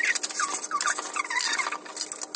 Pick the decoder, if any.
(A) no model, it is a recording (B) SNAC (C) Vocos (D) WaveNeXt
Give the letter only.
A